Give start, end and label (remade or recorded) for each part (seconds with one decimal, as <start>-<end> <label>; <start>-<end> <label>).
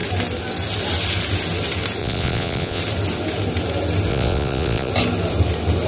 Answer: 0.0-2.0 recorded; 2.0-2.8 remade; 2.8-4.1 recorded; 4.1-4.9 remade; 4.9-5.9 recorded